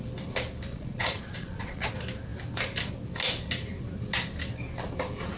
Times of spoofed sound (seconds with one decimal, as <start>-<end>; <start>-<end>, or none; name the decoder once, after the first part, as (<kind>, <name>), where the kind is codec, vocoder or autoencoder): 0.7-1.9 (vocoder, Vocos)